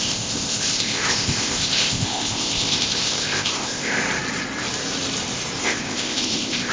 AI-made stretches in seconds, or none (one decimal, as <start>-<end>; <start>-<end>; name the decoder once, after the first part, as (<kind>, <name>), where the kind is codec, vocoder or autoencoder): 0.0-4.0 (codec, ZipCodec); 5.6-6.7